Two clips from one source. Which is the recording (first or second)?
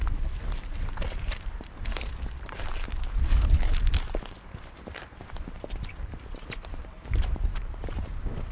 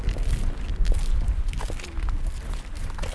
second